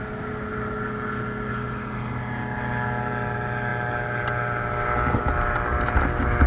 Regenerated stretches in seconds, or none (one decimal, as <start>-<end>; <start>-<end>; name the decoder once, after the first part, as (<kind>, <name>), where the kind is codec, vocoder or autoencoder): none

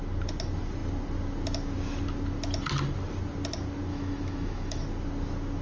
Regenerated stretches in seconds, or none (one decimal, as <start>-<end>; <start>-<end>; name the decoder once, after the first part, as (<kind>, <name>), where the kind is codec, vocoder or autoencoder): 3.9-4.8 (autoencoder, DAC-VAE)

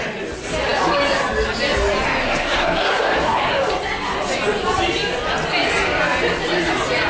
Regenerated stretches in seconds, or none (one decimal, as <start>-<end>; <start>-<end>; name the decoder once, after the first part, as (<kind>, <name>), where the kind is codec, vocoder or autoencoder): 2.2-3.5 (codec, SNAC)